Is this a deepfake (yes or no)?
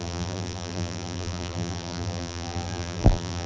yes